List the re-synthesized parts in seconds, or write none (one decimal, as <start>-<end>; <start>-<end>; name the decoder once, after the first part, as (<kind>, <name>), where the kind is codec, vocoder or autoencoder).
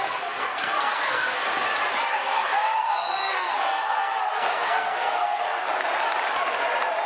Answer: 0.0-1.5 (codec, SNAC); 2.1-5.7